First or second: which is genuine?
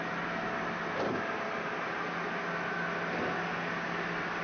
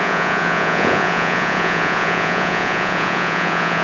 first